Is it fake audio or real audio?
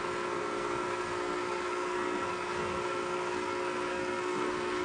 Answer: fake